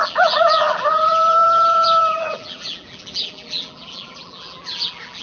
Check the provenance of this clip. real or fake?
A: fake